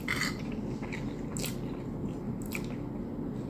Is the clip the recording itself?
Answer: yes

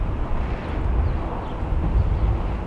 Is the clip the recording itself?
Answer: yes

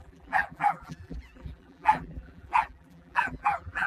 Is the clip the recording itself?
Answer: no